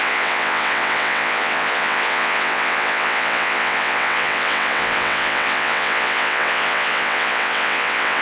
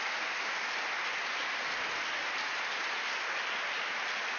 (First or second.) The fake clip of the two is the first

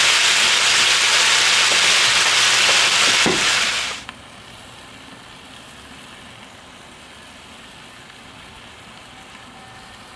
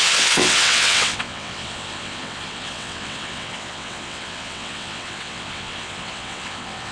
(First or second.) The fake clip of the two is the second